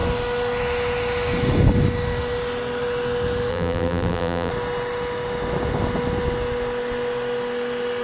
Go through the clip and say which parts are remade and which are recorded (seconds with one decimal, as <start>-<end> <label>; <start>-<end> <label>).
0.0-3.5 recorded; 3.5-4.5 remade; 4.5-8.0 recorded